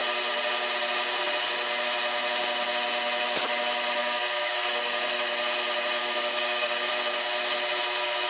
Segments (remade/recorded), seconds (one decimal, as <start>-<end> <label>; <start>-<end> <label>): 0.0-4.0 recorded; 4.0-5.2 remade; 5.2-6.0 recorded; 6.0-6.9 remade; 6.9-8.3 recorded